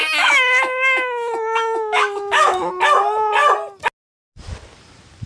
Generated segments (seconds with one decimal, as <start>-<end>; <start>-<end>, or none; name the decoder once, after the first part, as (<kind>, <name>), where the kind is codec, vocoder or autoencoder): 0.0-2.7 (autoencoder, DAC-VAE)